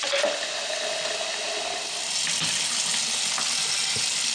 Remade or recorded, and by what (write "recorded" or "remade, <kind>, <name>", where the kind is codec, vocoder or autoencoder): recorded